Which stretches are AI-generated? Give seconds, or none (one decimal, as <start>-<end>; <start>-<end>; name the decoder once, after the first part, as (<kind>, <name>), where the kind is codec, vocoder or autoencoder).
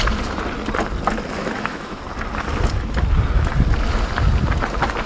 1.4-2.0 (autoencoder, DAC-VAE)